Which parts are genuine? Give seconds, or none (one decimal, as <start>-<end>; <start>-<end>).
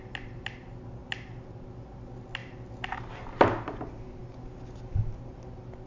0.0-5.9